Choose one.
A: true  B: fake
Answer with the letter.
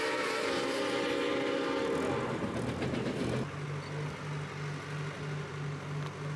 A